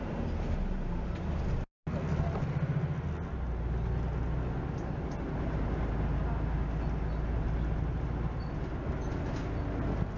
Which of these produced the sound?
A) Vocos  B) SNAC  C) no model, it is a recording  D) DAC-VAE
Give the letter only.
C